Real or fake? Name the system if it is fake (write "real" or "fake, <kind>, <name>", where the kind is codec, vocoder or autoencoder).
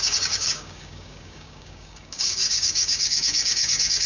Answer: fake, codec, DAC